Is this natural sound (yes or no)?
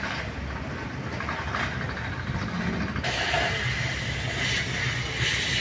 yes